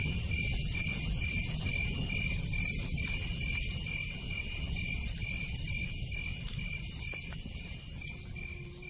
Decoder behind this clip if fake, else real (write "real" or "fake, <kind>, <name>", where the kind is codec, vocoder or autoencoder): real